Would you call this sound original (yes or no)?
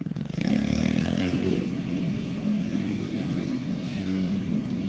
no